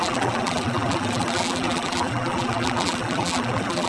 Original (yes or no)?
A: no